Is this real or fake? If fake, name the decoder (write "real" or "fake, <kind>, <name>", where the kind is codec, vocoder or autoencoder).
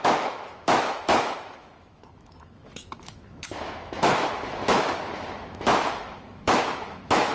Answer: fake, autoencoder, DAC-VAE